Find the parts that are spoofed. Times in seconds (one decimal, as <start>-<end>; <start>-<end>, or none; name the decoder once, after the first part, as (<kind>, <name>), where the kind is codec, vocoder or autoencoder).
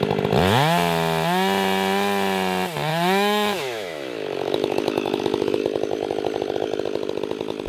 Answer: 2.9-5.6 (autoencoder, DAC-VAE)